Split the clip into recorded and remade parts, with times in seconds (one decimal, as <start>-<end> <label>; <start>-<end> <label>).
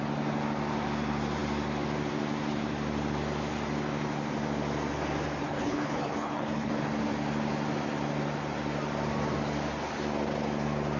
0.0-5.4 recorded; 5.4-6.7 remade; 6.7-11.0 recorded